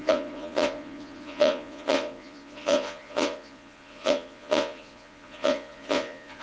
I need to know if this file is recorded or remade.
remade